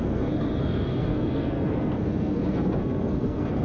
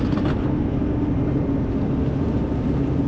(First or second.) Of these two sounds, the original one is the second